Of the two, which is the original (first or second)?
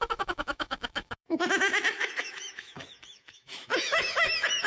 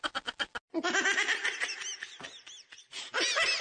second